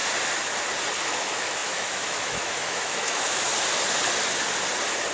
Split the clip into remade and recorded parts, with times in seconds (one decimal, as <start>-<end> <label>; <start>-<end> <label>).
0.0-1.0 recorded; 1.0-3.4 remade; 3.4-5.1 recorded